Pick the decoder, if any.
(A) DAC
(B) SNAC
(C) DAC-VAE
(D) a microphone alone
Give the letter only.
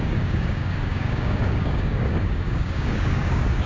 A